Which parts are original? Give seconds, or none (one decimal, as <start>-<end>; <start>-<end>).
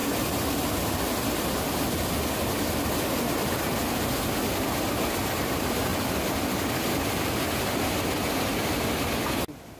0.0-9.8